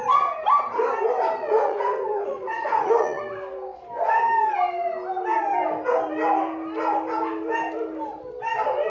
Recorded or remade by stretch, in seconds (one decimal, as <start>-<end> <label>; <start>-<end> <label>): 0.0-1.4 recorded; 1.4-3.2 remade; 3.2-8.9 recorded

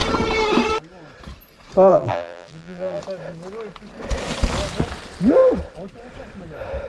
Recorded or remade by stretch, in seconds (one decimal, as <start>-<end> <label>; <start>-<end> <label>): 0.0-1.9 recorded; 1.9-3.0 remade; 3.0-6.9 recorded

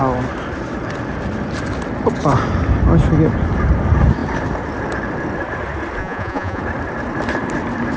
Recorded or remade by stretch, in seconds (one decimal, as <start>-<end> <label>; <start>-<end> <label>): 0.0-6.0 recorded; 6.0-6.6 remade; 6.6-8.0 recorded